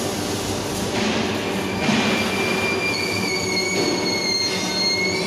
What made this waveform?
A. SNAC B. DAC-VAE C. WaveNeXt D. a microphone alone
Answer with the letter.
D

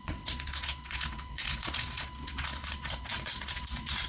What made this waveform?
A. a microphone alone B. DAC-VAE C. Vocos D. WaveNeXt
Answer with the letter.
C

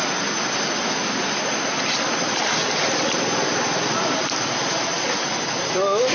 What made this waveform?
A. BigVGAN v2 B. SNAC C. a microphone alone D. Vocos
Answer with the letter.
C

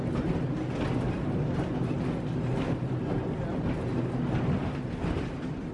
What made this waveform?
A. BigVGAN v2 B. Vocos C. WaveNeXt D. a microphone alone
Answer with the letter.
D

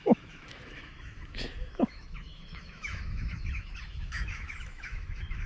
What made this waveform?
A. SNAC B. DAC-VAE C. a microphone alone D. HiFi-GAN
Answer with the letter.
B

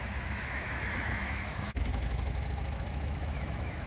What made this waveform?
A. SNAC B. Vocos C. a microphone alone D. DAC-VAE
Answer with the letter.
D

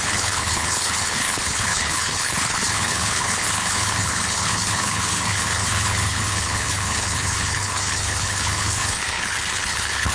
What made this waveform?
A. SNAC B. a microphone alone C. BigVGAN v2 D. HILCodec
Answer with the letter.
D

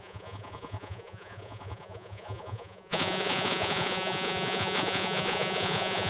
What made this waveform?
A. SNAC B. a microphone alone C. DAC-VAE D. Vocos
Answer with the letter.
D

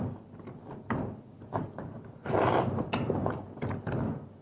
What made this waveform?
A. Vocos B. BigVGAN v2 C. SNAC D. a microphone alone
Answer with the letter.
D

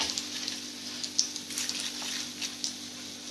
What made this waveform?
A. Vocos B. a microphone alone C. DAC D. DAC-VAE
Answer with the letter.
B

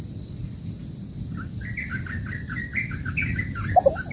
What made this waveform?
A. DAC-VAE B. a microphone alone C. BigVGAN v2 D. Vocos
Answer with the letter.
B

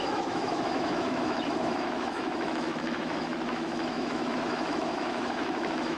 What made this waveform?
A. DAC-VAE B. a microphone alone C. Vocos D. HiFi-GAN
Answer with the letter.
A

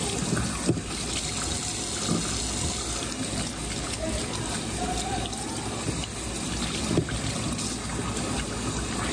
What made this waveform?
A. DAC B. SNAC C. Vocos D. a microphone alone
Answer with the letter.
D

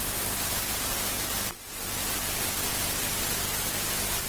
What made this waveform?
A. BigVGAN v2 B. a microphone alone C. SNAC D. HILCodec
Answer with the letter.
B